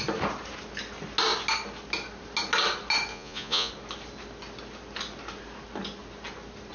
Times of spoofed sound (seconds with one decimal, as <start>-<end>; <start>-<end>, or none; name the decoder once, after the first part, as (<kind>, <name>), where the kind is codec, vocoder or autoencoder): 3.1-3.7 (vocoder, Vocos)